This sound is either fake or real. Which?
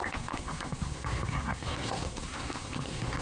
fake